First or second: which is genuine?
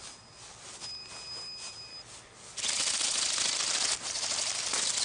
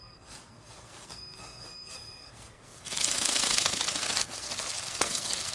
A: first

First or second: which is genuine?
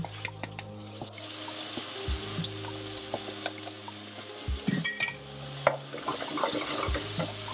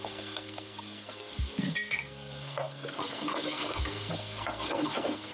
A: first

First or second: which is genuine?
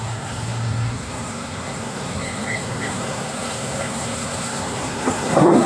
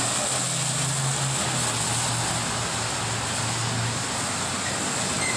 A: second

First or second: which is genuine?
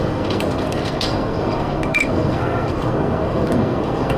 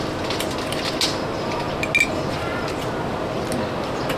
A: second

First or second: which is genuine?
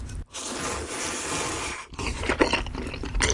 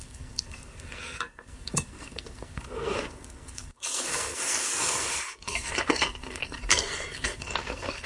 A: first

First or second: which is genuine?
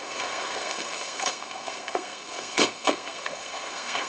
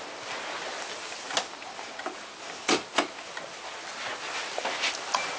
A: second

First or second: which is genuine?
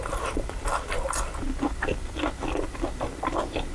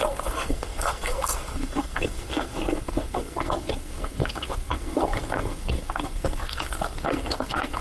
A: first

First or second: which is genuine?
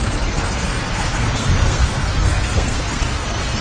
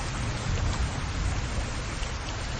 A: second